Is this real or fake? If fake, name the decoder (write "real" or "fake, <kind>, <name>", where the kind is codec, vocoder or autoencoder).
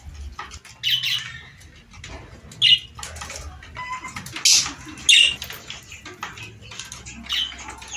real